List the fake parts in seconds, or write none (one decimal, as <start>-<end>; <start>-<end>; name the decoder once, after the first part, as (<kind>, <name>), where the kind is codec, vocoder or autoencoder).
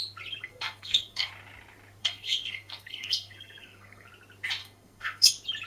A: 0.4-1.3 (codec, SNAC); 2.0-4.1; 4.6-5.3